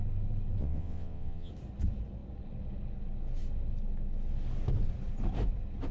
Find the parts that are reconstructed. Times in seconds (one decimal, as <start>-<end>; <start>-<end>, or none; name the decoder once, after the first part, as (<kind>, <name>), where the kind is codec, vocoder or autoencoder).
0.6-1.5 (vocoder, WaveNeXt)